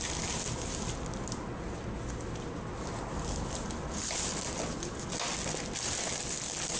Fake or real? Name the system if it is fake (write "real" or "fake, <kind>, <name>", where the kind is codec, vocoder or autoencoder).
real